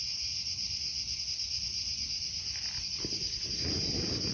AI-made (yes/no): no